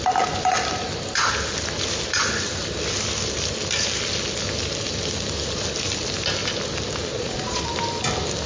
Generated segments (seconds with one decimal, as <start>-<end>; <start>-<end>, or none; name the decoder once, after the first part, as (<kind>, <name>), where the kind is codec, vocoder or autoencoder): 7.1-7.6 (vocoder, Vocos)